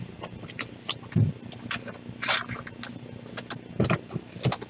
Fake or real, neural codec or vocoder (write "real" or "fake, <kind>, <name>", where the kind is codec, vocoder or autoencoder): real